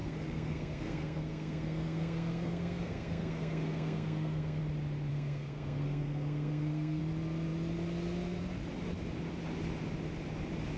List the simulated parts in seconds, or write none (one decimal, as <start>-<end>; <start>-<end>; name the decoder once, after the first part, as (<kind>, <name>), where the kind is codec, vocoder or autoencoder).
0.0-4.6 (codec, SNAC); 5.1-7.0